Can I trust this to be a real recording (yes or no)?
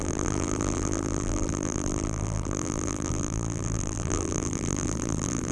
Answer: no